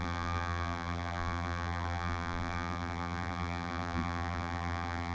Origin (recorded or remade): remade